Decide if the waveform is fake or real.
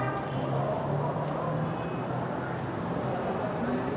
real